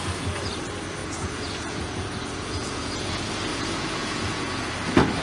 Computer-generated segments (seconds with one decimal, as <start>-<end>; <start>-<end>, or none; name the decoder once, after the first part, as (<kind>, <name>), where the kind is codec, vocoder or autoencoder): 1.0-3.1 (vocoder, Vocos); 3.5-4.7

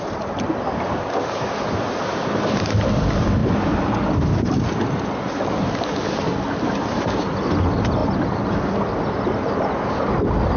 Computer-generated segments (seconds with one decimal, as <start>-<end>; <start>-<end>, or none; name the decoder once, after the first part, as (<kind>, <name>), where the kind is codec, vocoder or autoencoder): none

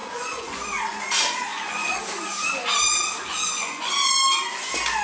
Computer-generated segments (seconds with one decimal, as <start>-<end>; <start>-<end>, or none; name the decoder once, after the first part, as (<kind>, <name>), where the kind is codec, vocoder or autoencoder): 0.0-1.0 (vocoder, Vocos); 1.5-2.0; 3.2-3.9

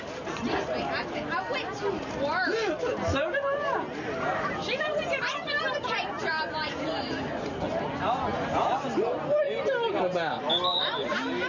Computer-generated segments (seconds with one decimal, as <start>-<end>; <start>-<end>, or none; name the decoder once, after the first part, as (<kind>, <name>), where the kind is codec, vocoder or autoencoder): none